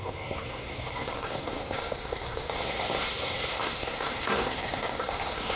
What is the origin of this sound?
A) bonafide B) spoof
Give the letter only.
B